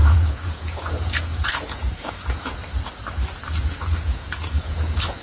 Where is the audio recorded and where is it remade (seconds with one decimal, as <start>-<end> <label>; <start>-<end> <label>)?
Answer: 0.0-2.6 remade; 2.6-3.6 recorded; 3.6-5.2 remade

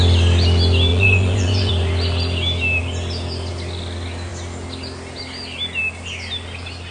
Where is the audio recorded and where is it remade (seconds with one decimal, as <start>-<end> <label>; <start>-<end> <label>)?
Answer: 0.0-0.9 recorded; 0.9-1.7 remade; 1.7-6.9 recorded